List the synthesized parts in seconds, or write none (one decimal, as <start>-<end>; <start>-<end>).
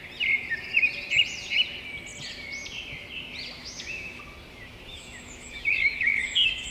3.6-4.2; 4.9-6.7